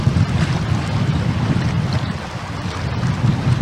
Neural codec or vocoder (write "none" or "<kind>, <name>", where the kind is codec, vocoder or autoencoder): none